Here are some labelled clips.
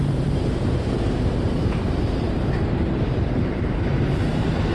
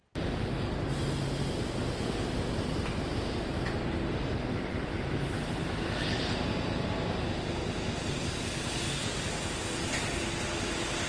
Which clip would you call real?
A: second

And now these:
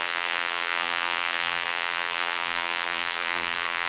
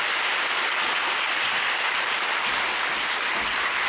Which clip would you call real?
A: second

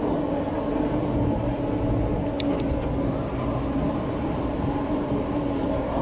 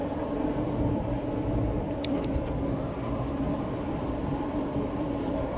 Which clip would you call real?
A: first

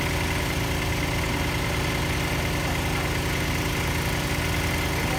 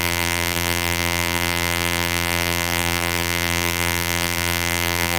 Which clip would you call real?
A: first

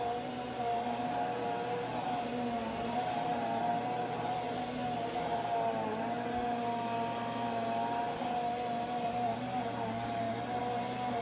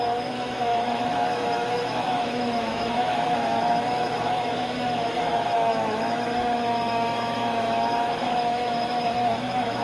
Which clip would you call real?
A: first